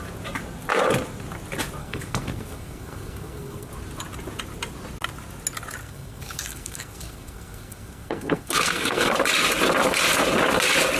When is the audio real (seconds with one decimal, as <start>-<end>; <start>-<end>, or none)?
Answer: 0.0-1.8; 3.7-5.8; 9.1-11.0